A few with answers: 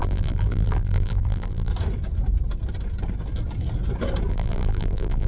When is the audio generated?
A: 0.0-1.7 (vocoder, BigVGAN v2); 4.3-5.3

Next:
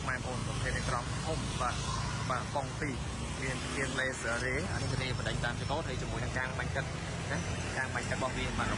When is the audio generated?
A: 0.4-1.7 (vocoder, BigVGAN v2)

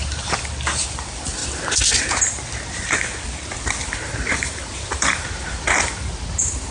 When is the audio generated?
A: 3.8-6.7 (vocoder, BigVGAN v2)